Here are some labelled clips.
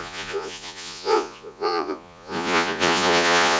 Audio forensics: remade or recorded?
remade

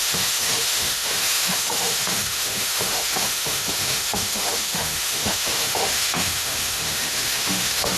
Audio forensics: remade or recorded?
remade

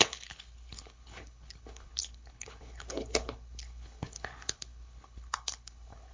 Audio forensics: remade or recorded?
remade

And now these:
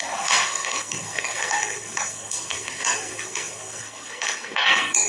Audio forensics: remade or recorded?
remade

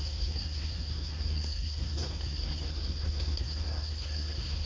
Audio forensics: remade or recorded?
remade